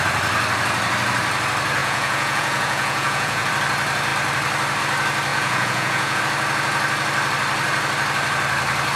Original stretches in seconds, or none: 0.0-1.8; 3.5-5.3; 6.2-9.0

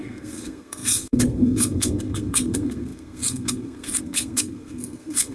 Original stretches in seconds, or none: none

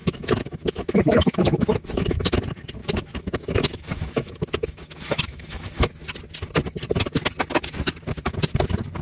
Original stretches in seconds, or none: 2.4-2.8; 5.9-9.0

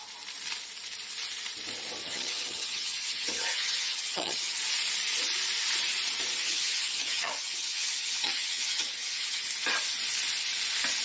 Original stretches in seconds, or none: 0.0-2.0; 4.6-6.4; 9.4-11.0

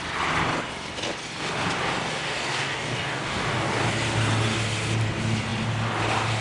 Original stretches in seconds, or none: 0.0-2.1; 3.8-6.4

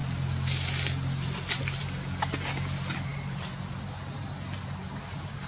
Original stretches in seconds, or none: 0.0-5.5

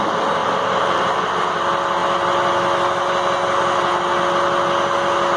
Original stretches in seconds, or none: 0.0-0.4; 1.3-5.4